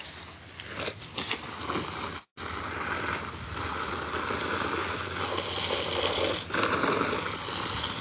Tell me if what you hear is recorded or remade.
recorded